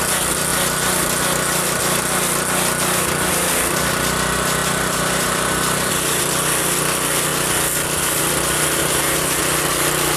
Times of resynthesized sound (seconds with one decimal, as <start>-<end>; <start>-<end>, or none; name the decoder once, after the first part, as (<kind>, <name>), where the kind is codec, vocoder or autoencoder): 4.6-6.2 (vocoder, BigVGAN v2); 8.8-9.4